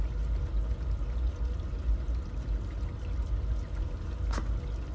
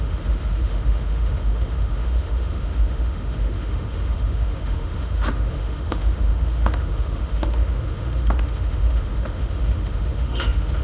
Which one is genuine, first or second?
first